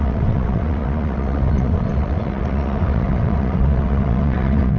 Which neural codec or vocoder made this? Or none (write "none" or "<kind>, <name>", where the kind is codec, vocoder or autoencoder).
vocoder, WaveNeXt